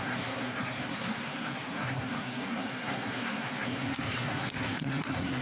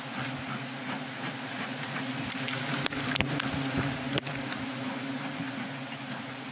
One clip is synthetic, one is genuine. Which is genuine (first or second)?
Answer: second